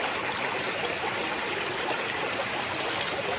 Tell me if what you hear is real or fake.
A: real